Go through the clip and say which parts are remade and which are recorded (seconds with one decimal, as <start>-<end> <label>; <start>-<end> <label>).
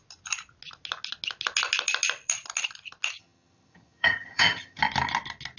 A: 0.0-3.2 recorded; 3.2-4.8 remade; 4.8-5.6 recorded